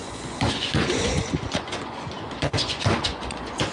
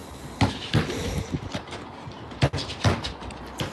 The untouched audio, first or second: second